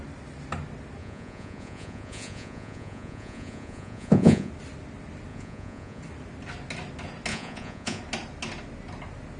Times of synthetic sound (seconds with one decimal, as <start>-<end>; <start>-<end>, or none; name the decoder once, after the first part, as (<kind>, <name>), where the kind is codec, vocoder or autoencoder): 1.0-4.5 (vocoder, Vocos); 5.3-6.0; 7.3-8.0